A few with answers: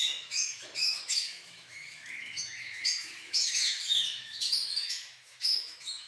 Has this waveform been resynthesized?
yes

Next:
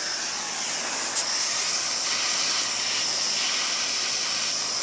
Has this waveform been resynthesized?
no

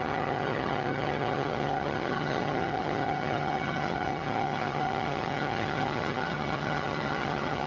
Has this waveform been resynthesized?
yes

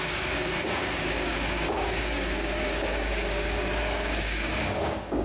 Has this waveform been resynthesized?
yes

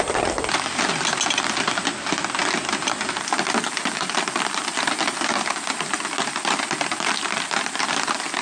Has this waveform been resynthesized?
no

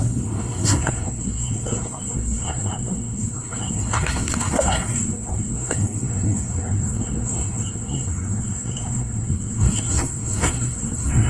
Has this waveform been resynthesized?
yes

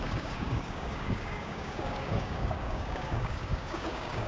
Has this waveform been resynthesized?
yes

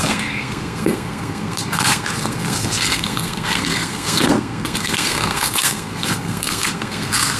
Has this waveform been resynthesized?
yes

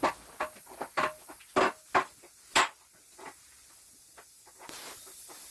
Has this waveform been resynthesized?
no